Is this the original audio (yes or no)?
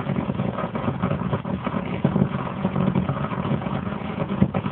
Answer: no